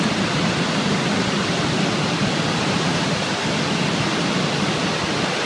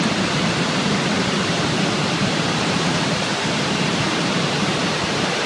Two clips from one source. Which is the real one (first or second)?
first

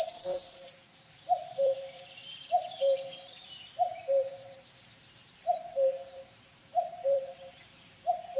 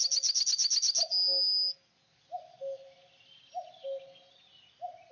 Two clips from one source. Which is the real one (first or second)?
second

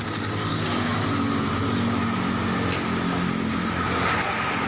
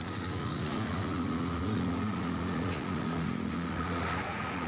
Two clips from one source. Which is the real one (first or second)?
first